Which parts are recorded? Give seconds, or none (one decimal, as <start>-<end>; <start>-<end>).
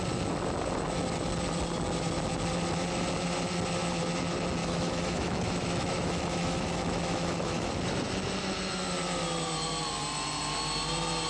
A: 0.0-4.6; 7.7-11.3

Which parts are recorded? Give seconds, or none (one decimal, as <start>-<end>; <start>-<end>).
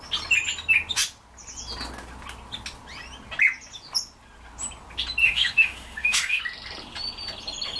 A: 0.0-5.2; 6.4-7.8